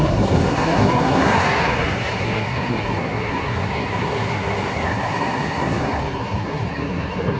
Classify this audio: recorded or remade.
remade